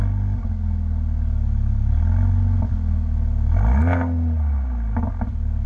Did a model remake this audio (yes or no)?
no